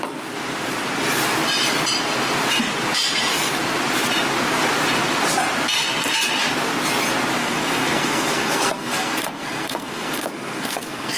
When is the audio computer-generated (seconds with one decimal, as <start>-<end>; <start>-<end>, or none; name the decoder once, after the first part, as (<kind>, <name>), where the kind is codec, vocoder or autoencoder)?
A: 7.4-11.2 (codec, SNAC)

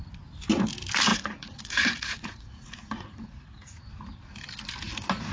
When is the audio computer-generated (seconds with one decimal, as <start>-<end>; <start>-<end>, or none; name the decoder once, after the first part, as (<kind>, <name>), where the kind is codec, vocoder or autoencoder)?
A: 1.1-3.9 (vocoder, Vocos)

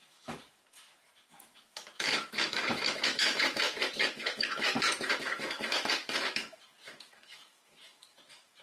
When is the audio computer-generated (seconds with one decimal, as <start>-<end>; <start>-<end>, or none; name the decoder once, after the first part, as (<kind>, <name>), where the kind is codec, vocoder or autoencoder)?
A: 0.0-8.6 (autoencoder, DAC-VAE)

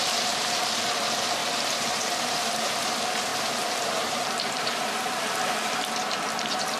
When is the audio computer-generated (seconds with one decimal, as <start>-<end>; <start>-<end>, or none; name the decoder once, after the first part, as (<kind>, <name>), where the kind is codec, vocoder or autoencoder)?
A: 0.0-6.8 (vocoder, BigVGAN v2)

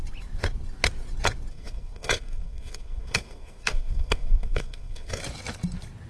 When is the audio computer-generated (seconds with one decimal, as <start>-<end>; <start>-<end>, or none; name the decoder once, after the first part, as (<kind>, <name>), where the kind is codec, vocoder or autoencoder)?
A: 1.5-5.2 (codec, SNAC)

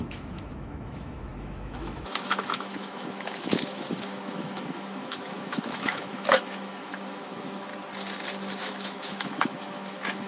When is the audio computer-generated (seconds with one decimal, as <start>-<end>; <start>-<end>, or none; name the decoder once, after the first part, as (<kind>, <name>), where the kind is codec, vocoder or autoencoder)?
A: 0.0-7.7 (autoencoder, DAC-VAE); 8.6-10.3